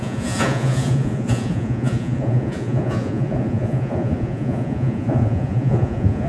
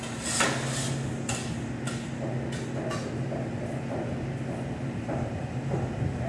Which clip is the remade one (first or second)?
first